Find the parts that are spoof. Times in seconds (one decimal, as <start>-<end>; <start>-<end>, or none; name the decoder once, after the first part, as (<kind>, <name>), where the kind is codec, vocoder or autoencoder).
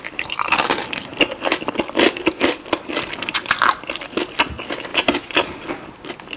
none